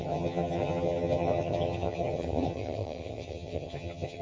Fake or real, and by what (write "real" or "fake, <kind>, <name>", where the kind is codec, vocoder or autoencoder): fake, vocoder, HiFi-GAN